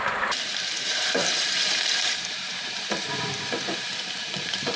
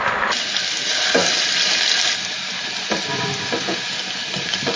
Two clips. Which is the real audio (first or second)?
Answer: second